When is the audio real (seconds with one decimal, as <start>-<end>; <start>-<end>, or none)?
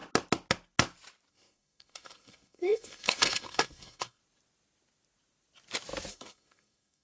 0.0-1.3; 4.2-6.1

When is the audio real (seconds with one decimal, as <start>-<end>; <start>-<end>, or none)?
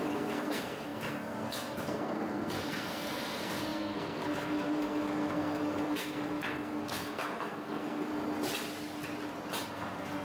8.1-9.7